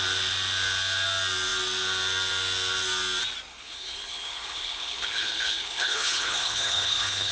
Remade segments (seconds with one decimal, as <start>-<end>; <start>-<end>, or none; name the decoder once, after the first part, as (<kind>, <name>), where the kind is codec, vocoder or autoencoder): 3.5-7.3 (codec, HILCodec)